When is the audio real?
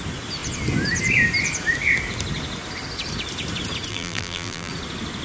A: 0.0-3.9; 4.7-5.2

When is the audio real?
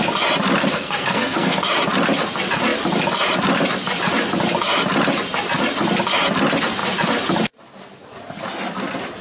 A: 0.0-0.6; 1.6-9.2